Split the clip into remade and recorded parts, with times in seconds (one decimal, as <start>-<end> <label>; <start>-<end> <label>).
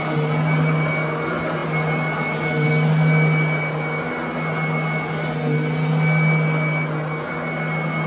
0.0-8.1 recorded